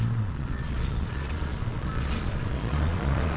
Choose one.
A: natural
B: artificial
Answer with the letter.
B